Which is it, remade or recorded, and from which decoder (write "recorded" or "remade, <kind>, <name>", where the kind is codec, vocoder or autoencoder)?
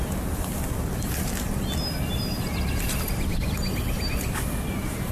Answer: recorded